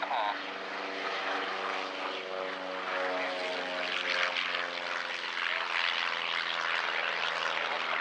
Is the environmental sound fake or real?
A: real